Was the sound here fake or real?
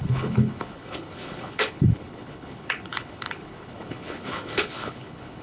fake